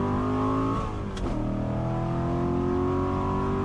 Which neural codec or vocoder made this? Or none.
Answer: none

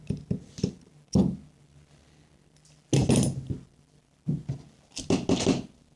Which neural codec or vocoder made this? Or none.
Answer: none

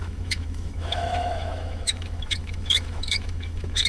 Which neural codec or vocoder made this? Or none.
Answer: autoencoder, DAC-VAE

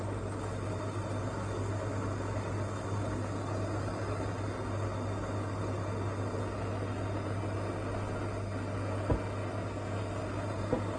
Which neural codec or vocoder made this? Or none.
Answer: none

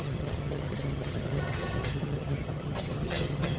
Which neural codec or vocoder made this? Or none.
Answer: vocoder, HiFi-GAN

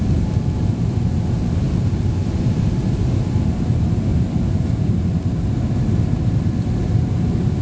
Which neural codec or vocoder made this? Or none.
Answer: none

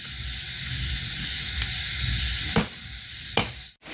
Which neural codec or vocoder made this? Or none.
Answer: none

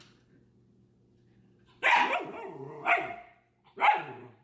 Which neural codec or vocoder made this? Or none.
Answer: none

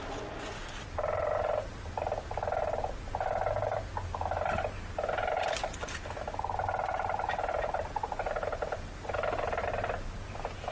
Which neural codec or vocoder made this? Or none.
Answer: none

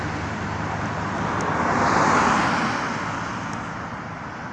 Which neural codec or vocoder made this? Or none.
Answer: none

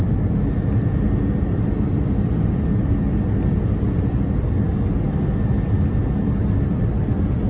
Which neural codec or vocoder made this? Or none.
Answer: none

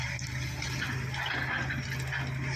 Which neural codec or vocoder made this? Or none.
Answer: none